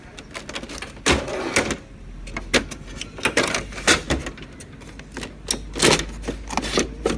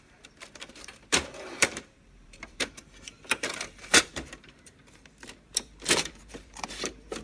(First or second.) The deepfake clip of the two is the second